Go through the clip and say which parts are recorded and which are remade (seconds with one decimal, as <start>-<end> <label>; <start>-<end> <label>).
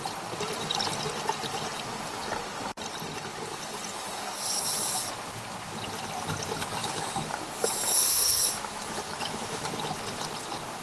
0.0-6.8 recorded; 6.8-9.7 remade; 9.7-10.8 recorded